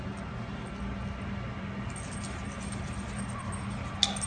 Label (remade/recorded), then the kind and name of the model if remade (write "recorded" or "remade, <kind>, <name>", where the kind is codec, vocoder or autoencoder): recorded